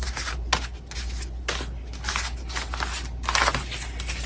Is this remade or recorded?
recorded